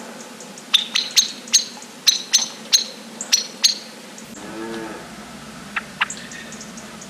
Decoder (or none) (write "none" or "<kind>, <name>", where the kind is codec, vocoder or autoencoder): none